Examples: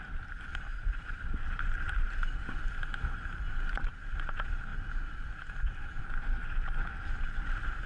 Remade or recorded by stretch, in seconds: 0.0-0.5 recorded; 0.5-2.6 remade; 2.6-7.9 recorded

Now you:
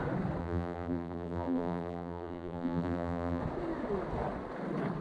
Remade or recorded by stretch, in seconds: 0.0-0.4 recorded; 0.4-3.4 remade; 3.4-5.0 recorded

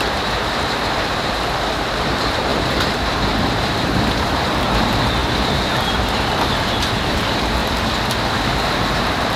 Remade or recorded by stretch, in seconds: 0.0-7.6 remade; 7.6-8.9 recorded; 8.9-9.4 remade

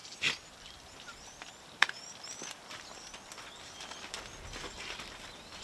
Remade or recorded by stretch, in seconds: 0.0-3.4 remade; 3.4-5.6 recorded